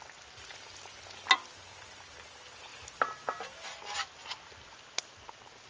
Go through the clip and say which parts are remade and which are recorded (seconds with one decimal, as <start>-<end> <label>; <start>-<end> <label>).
0.0-5.7 recorded

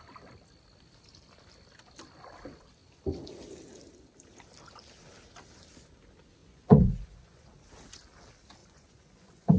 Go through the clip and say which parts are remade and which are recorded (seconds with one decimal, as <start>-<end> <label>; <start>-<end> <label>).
0.0-6.4 recorded; 6.4-7.5 remade; 7.5-8.6 recorded; 8.6-9.6 remade

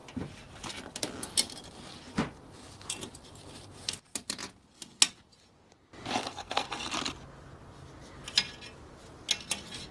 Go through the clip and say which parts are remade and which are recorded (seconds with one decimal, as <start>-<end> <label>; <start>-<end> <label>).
0.0-6.2 recorded; 6.2-6.9 remade; 6.9-9.9 recorded

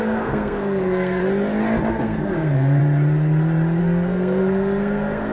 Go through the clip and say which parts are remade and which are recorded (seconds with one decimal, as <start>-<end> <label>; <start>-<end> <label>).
0.0-1.2 remade; 1.2-1.9 recorded; 1.9-2.8 remade; 2.8-3.8 recorded; 3.8-5.3 remade